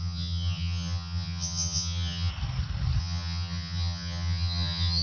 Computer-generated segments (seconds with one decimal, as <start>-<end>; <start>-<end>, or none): 0.0-2.3; 3.0-5.0